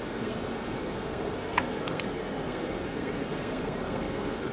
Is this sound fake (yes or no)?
yes